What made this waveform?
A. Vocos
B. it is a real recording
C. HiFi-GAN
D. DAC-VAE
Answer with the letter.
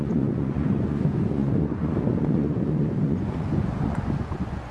A